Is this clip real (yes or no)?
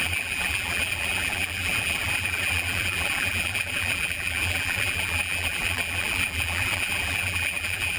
no